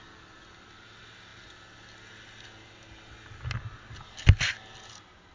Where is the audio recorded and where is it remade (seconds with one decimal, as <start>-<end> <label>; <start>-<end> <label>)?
0.0-5.3 recorded